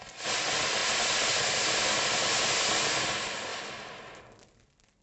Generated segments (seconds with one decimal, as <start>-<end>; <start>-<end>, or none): 3.5-4.2